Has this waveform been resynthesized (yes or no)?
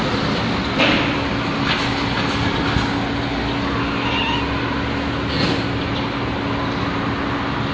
no